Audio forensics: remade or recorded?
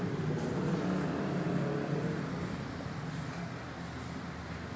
recorded